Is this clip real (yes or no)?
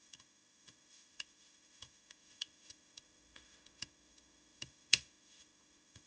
no